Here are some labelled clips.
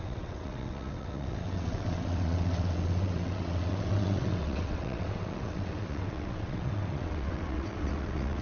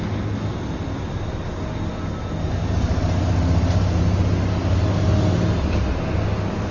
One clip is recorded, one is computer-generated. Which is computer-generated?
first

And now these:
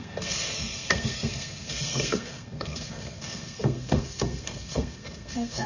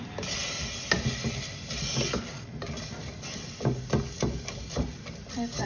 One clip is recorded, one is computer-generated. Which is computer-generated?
first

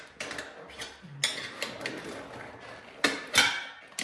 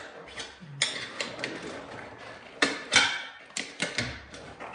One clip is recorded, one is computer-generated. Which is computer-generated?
second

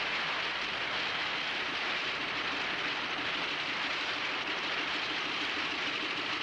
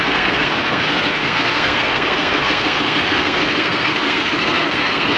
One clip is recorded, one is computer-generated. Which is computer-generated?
second